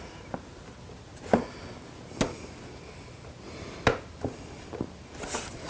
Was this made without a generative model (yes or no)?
yes